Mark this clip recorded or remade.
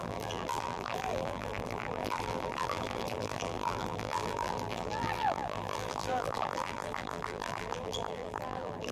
remade